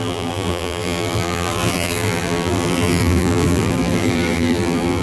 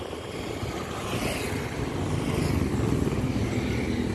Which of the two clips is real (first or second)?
second